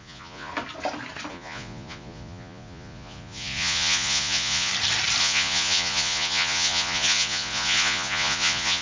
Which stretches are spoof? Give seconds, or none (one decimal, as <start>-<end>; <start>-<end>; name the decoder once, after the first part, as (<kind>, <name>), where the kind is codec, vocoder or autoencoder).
0.0-0.5 (vocoder, Vocos); 1.3-4.7; 5.2-8.8